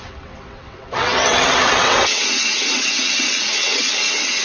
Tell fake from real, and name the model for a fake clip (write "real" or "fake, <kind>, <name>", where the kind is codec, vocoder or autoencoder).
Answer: fake, vocoder, WaveNeXt